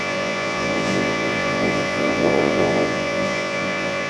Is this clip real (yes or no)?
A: no